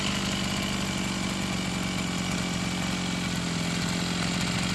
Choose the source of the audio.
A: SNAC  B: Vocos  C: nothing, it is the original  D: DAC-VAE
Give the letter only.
C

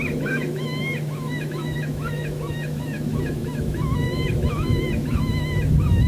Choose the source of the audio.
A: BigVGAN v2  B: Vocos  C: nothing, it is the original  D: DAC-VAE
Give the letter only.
D